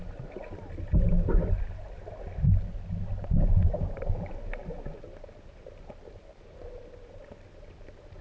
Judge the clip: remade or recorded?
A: recorded